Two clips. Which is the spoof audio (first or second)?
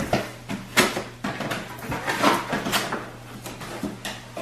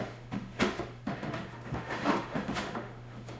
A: second